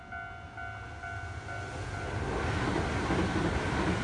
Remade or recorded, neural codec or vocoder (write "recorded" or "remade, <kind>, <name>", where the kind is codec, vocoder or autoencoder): recorded